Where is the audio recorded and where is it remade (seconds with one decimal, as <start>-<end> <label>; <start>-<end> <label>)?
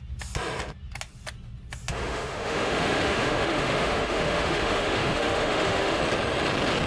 0.0-1.9 recorded; 1.9-6.0 remade; 6.0-6.9 recorded